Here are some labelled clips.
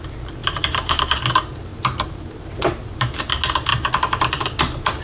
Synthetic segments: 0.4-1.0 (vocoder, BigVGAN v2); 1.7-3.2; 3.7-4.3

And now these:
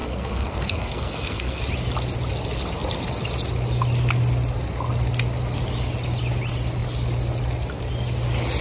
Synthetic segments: 0.0-1.6 (codec, SNAC)

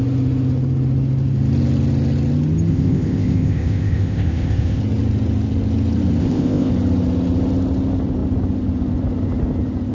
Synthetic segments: 2.7-4.8 (codec, ZipCodec); 6.2-6.7

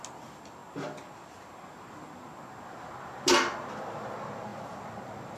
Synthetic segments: none

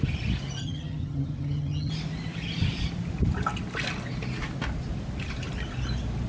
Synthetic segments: 0.6-1.9 (vocoder, HiFi-GAN)